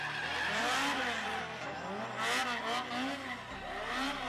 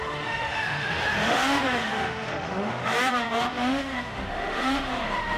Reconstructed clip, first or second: second